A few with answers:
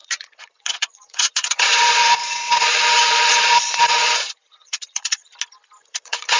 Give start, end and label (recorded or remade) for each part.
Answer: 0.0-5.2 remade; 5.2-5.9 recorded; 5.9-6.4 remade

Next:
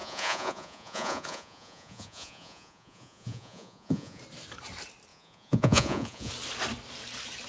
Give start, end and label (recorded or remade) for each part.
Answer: 0.0-4.2 remade; 4.2-5.1 recorded; 5.1-6.3 remade; 6.3-7.5 recorded

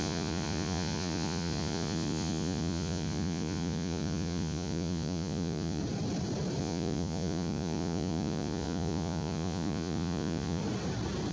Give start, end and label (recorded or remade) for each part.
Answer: 0.0-5.8 remade; 5.8-6.6 recorded; 6.6-10.6 remade; 10.6-11.3 recorded

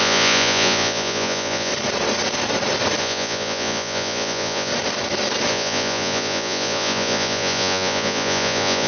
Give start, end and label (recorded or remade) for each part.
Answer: 0.0-1.7 remade; 1.7-3.0 recorded; 3.0-4.7 remade; 4.7-5.5 recorded; 5.5-8.9 remade